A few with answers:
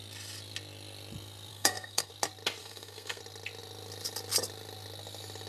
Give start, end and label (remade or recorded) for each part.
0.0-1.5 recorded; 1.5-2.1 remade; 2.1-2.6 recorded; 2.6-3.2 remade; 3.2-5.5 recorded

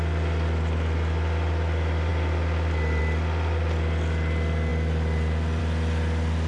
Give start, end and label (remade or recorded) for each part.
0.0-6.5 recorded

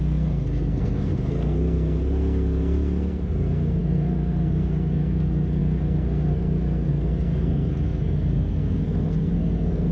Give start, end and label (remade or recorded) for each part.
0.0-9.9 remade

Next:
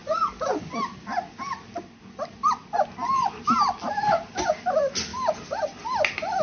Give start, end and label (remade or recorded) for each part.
0.0-6.4 recorded